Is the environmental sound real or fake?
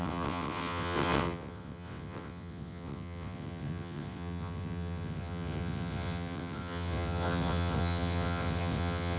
fake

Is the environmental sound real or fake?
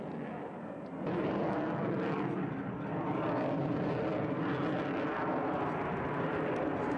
real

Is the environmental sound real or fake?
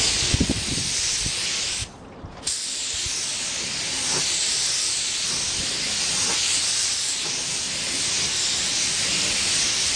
real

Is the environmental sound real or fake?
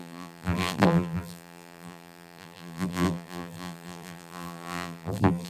fake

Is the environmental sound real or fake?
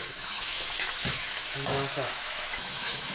fake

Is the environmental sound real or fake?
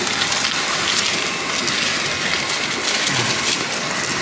real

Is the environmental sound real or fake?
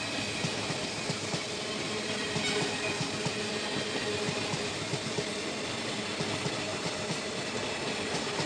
real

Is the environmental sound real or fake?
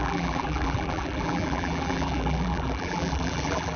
fake